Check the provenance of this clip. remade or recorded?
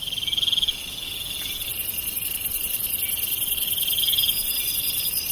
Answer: recorded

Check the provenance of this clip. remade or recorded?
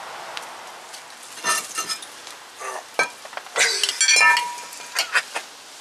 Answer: recorded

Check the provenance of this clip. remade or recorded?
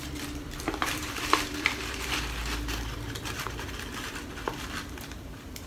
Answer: remade